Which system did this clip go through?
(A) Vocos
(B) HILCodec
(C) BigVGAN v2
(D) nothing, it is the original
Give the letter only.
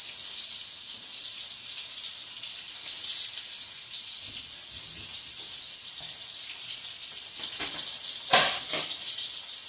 D